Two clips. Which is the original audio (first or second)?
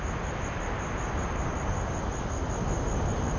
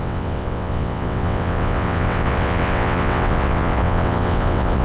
first